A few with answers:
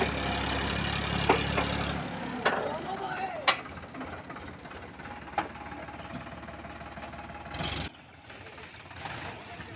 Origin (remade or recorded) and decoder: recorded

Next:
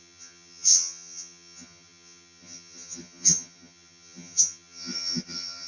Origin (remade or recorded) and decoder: remade, vocoder, HiFi-GAN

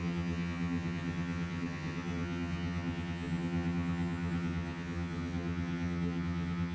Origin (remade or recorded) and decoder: remade, vocoder, HiFi-GAN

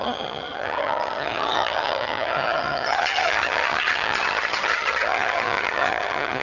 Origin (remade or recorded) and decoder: remade, vocoder, HiFi-GAN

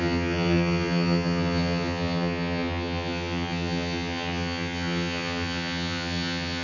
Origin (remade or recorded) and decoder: remade, vocoder, HiFi-GAN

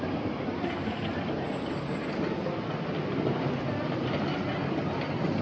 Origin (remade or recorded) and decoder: recorded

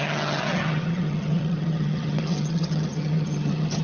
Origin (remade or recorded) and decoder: remade, vocoder, HiFi-GAN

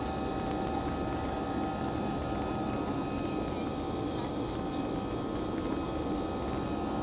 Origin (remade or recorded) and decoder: recorded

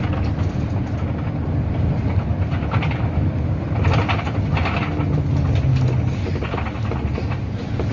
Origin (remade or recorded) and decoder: recorded